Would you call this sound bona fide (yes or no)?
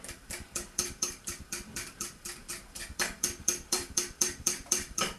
no